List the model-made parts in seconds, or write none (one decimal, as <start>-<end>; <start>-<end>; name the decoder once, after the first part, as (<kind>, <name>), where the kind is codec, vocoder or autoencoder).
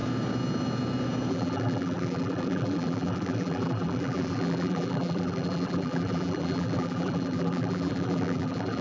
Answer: 1.3-8.8 (vocoder, BigVGAN v2)